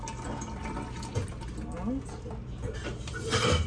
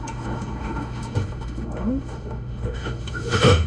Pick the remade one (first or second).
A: second